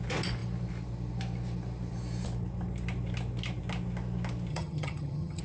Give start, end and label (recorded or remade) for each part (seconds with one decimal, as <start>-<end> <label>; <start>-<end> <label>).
0.0-4.5 recorded; 4.5-5.4 remade